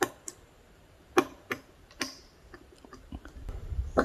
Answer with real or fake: fake